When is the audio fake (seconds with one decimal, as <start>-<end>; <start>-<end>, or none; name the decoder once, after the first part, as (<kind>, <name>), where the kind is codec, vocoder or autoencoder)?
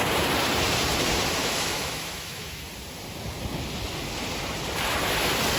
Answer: 1.4-2.6 (autoencoder, DAC-VAE)